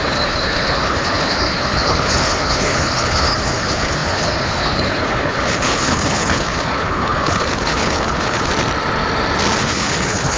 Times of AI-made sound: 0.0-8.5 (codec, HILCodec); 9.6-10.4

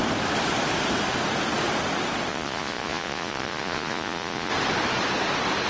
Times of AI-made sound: 2.3-4.5 (vocoder, Vocos)

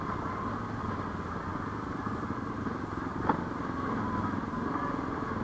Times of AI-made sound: 1.5-3.4 (vocoder, BigVGAN v2)

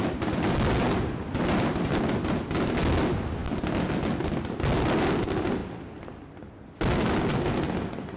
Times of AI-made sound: none